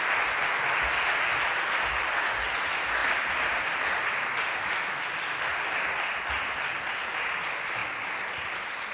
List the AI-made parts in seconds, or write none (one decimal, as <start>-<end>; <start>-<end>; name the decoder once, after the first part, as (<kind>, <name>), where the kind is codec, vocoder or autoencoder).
3.0-5.1 (vocoder, BigVGAN v2); 5.5-7.1